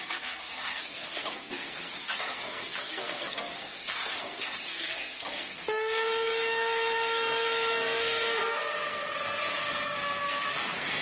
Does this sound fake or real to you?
fake